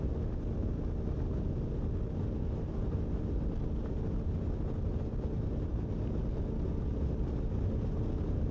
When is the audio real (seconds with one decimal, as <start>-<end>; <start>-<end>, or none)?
0.0-5.7; 6.2-8.5